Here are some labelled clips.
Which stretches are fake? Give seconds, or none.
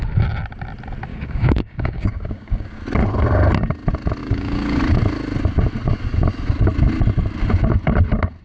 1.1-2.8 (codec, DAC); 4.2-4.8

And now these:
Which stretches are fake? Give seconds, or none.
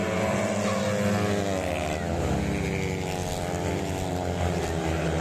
none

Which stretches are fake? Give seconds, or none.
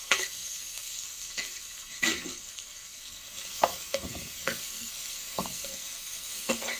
0.0-6.8 (codec, SNAC)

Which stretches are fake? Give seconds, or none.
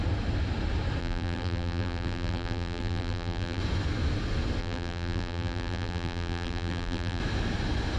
1.0-3.6 (vocoder, BigVGAN v2); 4.6-7.2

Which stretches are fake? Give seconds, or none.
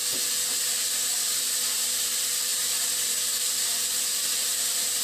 1.4-5.0 (vocoder, BigVGAN v2)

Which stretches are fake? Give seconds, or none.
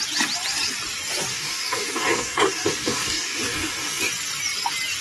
1.3-4.1 (codec, DAC)